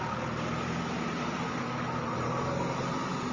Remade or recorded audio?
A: recorded